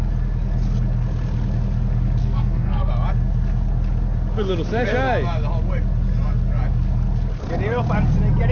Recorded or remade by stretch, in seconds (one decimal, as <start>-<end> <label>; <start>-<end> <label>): 0.0-2.2 recorded; 2.2-2.9 remade; 2.9-8.5 recorded